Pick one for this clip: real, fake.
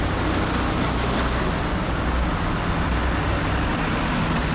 real